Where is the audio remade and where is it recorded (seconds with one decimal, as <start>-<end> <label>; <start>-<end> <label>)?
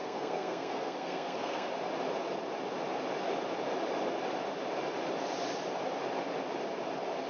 0.0-1.7 remade; 1.7-7.3 recorded